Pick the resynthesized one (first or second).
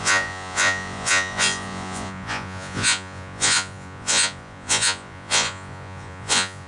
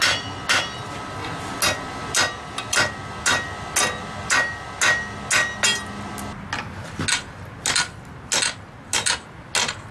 first